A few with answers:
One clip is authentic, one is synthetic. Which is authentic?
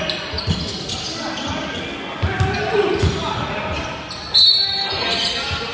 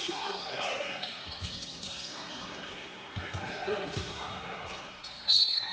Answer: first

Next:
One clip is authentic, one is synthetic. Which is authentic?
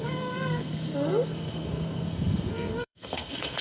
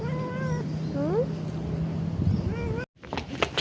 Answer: second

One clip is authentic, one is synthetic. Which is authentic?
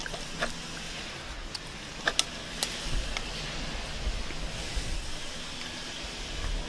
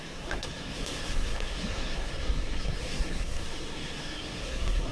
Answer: first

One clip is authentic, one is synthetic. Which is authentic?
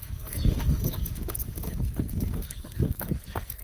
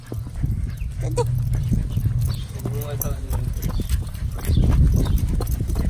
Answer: second